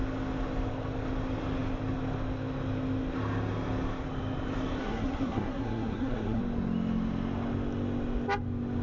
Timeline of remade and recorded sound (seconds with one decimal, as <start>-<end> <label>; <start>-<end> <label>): 0.0-4.8 recorded; 4.8-6.4 remade; 6.4-8.8 recorded

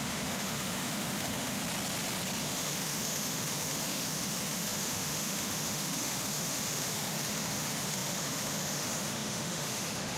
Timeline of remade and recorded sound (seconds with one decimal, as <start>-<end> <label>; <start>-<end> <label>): 0.0-1.6 remade; 1.6-2.4 recorded; 2.4-10.2 remade

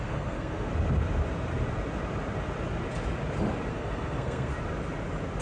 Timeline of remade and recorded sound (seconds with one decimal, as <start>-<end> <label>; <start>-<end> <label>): 0.0-0.7 remade; 0.7-3.7 recorded; 3.7-4.5 remade; 4.5-5.4 recorded

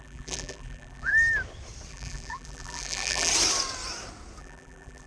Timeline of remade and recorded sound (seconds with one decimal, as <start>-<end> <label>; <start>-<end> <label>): 0.0-1.1 remade; 1.1-1.9 recorded; 1.9-3.3 remade; 3.3-4.4 recorded; 4.4-5.1 remade